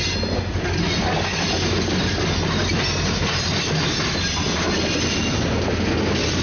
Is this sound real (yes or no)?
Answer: yes